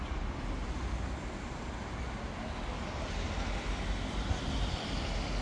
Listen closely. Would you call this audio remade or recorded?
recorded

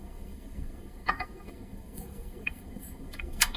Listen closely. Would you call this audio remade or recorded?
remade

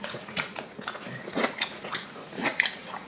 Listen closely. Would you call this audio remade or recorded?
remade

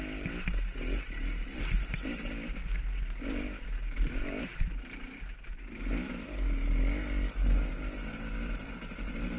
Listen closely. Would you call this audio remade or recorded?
recorded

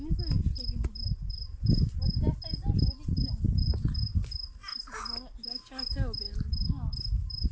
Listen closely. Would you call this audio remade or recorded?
recorded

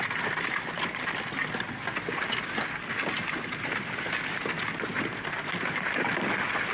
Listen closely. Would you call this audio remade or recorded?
recorded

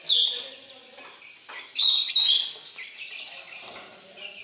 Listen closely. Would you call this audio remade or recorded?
recorded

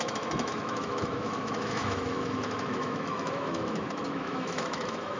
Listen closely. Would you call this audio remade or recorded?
remade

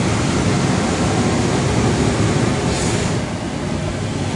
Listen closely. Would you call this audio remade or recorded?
recorded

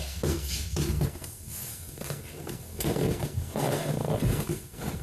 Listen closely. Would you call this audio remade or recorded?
remade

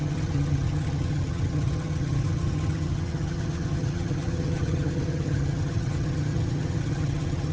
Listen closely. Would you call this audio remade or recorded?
remade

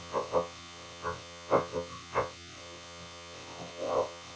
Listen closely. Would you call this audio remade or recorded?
remade